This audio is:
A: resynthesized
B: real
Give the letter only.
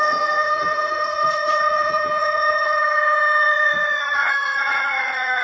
A